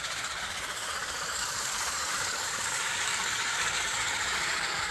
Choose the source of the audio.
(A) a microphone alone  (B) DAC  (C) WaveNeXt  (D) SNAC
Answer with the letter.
B